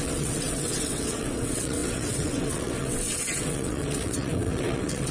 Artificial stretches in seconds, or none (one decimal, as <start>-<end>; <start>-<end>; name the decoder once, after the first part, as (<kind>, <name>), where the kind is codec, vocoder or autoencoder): 0.0-5.1 (vocoder, WaveNeXt)